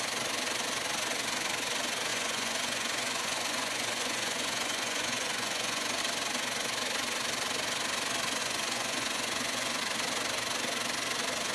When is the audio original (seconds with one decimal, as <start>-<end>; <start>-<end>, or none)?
0.0-2.1; 6.0-8.4; 9.8-11.5